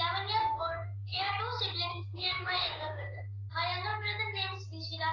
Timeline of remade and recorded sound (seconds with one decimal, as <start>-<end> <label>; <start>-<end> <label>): 0.0-0.4 recorded; 0.4-1.3 remade; 1.3-1.9 recorded; 1.9-3.5 remade; 3.5-5.1 recorded